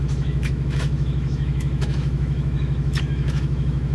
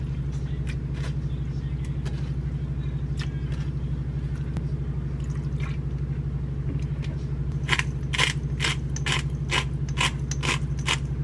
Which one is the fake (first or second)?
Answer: first